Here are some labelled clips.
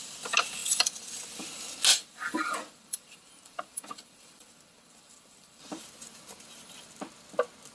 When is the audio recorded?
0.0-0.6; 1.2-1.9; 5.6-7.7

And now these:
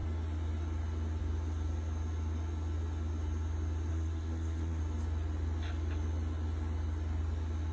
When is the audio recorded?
0.0-3.9; 4.8-7.7

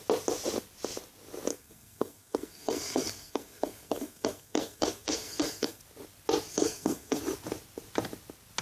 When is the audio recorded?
0.0-1.5; 5.8-6.5; 7.2-8.6